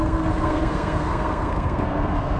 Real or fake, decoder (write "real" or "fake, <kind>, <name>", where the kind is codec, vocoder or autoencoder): fake, codec, SNAC